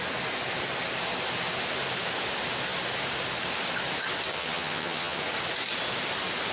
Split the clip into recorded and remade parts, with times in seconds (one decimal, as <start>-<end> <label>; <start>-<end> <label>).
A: 0.0-4.3 recorded; 4.3-5.2 remade; 5.2-6.5 recorded